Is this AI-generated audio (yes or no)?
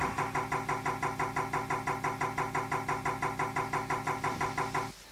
yes